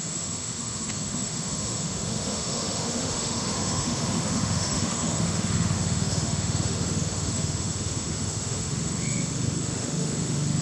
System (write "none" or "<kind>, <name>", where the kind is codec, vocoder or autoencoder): autoencoder, DAC-VAE